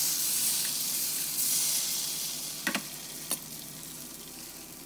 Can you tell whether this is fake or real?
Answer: fake